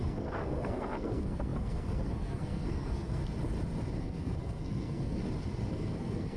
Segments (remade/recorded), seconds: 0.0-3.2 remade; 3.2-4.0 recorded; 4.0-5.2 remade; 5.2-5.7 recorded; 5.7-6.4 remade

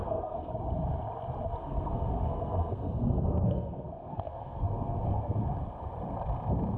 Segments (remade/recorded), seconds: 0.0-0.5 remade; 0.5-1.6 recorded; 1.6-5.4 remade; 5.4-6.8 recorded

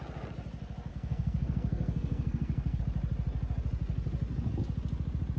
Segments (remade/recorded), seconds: 0.0-0.9 recorded; 0.9-2.8 remade; 2.8-5.4 recorded

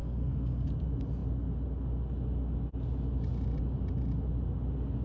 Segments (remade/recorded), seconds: 0.0-0.7 remade; 0.7-5.0 recorded

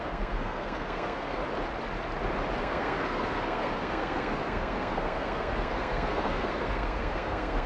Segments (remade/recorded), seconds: 0.0-1.4 remade; 1.4-2.6 recorded; 2.6-7.7 remade

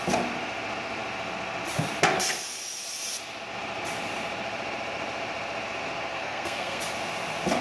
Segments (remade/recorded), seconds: 0.0-6.1 recorded; 6.1-6.8 remade; 6.8-7.6 recorded